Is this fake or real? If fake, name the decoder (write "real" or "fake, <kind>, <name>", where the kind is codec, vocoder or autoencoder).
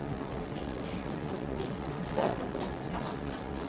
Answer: fake, vocoder, WaveNeXt